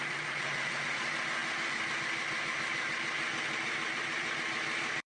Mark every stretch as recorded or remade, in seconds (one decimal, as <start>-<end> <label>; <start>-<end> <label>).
0.0-5.2 remade